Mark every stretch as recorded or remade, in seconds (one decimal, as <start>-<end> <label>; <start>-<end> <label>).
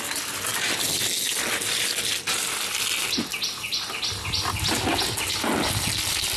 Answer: 0.0-6.4 recorded